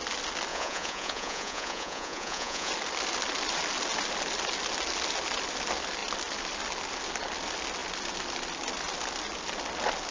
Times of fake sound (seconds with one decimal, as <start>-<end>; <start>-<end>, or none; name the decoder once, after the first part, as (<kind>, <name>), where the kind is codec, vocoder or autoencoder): 0.5-2.7 (vocoder, Vocos)